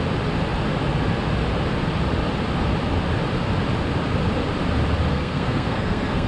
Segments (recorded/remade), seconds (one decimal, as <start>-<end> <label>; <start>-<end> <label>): 0.0-5.1 recorded; 5.1-6.3 remade